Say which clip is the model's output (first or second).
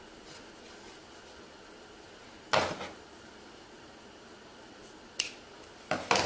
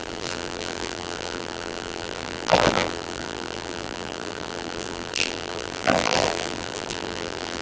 second